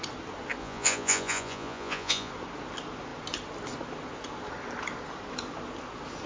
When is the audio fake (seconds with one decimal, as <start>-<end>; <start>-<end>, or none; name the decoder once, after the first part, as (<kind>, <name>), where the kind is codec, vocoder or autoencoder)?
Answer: 0.6-2.3 (vocoder, Vocos)

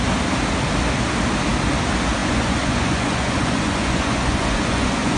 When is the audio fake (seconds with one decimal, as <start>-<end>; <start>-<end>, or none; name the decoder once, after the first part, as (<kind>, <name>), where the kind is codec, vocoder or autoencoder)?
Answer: 2.2-5.2 (vocoder, Vocos)

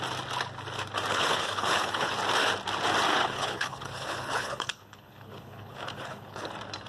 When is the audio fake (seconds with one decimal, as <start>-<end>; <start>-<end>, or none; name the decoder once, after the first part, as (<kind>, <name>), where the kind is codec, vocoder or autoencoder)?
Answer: 1.1-2.1 (codec, HILCodec); 3.1-6.5

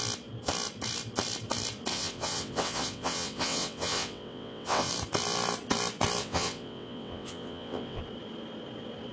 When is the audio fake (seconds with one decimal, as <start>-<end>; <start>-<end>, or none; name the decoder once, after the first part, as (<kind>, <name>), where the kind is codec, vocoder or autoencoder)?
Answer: 1.9-4.9 (vocoder, WaveNeXt); 6.2-8.0

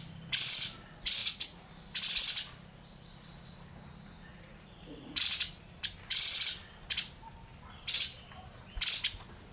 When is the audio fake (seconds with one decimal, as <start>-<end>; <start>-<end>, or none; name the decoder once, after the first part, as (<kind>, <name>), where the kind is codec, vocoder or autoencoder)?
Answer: 1.2-1.7 (vocoder, Vocos); 4.3-5.4